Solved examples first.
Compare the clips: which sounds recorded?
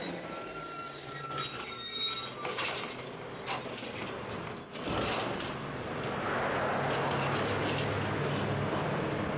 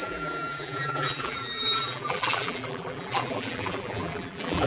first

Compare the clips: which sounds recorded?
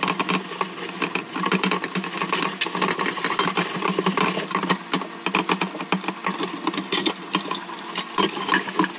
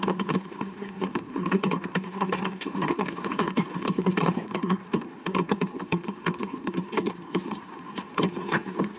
first